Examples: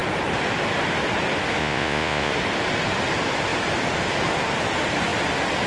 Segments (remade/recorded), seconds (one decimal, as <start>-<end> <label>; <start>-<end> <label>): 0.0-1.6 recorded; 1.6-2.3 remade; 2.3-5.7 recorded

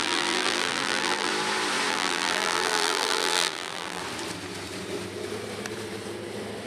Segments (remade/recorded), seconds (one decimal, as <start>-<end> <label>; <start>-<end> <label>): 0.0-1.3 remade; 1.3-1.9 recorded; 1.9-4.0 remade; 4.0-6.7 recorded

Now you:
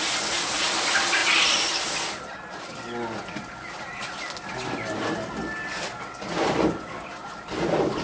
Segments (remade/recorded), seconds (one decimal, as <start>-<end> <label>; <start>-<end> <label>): 0.0-8.0 recorded

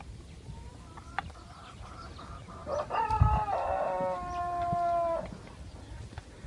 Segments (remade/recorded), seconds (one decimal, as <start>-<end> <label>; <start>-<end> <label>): 0.0-6.5 recorded